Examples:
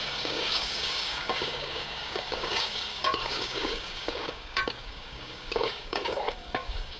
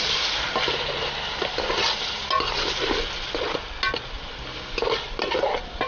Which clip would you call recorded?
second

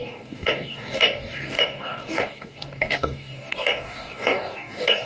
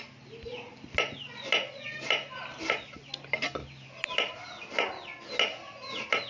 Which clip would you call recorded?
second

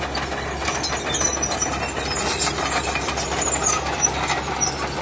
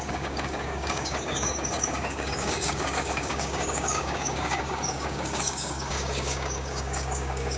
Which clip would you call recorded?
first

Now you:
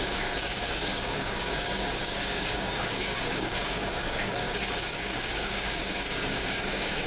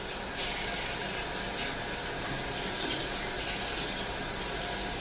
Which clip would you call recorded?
second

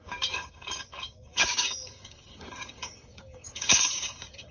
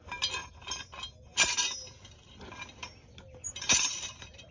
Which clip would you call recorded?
second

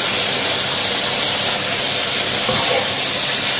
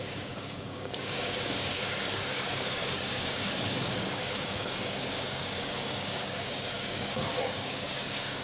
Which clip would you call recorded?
first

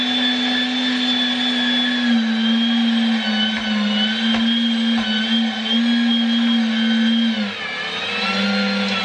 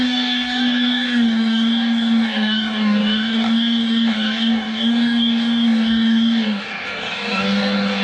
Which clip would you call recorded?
first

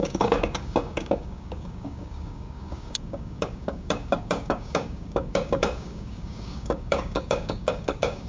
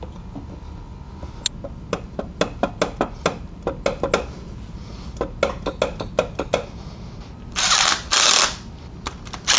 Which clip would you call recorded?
second